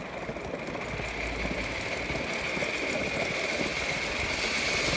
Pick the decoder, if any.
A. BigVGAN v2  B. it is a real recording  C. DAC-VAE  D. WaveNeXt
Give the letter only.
B